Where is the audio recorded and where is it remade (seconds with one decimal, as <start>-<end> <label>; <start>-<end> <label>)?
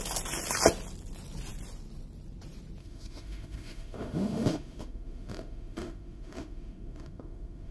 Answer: 0.0-2.8 recorded; 2.8-7.7 remade